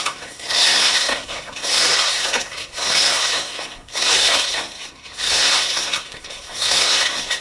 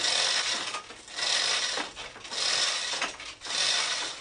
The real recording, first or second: second